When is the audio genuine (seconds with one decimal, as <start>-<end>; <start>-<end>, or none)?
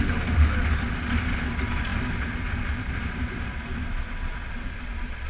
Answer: 0.0-5.3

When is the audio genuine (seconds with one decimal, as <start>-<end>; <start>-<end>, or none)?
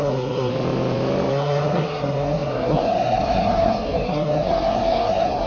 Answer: 0.5-1.3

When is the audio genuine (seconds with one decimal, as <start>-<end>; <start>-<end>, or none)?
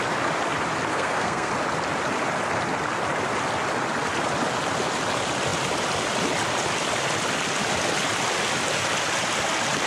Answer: 0.0-0.9; 1.5-9.9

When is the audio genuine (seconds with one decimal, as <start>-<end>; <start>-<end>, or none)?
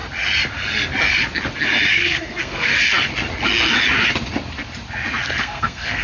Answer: 0.0-1.9; 2.7-5.4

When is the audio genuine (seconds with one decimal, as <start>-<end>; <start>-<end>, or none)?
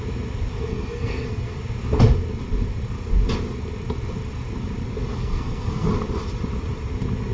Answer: 0.0-0.5; 1.6-5.1; 5.9-7.3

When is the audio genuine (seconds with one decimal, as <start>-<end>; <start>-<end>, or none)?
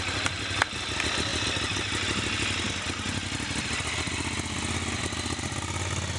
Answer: 0.0-6.2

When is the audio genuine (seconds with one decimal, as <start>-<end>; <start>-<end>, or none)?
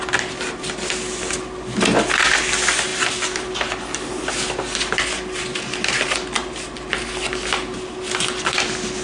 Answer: 0.0-9.0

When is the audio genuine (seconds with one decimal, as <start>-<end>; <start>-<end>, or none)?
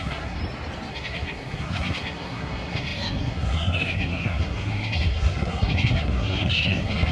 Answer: 0.4-0.9